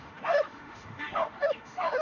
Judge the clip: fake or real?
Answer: fake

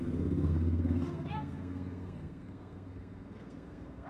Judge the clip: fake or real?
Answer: fake